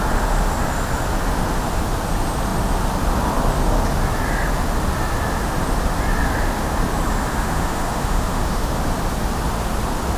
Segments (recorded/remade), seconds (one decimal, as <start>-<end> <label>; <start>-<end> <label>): 0.0-7.3 recorded; 7.3-8.8 remade; 8.8-10.2 recorded